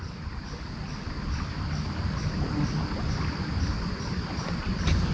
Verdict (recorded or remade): recorded